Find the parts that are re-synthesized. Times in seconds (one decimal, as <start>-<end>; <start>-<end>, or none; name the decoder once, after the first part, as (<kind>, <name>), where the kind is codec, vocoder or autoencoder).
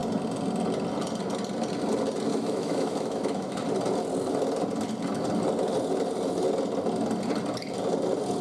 2.3-3.6 (autoencoder, DAC-VAE)